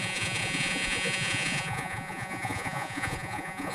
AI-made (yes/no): yes